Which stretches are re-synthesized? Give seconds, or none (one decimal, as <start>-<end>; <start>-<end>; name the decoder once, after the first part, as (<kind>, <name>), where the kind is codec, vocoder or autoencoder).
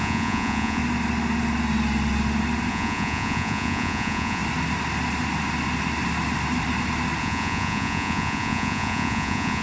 0.0-0.8 (vocoder, Vocos); 2.7-4.4; 7.2-9.6